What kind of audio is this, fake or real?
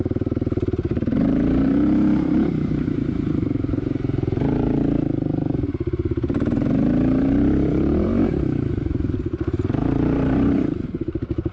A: fake